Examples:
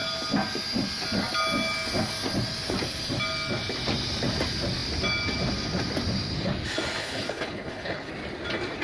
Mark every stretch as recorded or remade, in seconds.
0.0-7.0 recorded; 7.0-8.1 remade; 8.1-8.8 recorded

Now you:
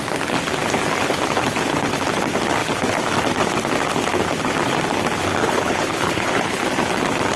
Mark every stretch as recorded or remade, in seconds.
0.0-5.4 recorded; 5.4-6.6 remade; 6.6-7.4 recorded